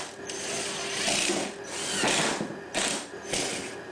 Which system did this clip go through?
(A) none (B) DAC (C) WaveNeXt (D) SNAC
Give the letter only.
A